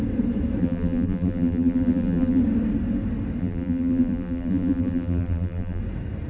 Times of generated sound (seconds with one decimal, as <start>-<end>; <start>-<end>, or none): 0.6-2.4; 3.4-5.8